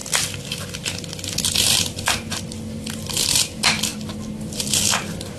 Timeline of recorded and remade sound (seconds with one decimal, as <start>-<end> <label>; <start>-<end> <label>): 0.0-5.4 recorded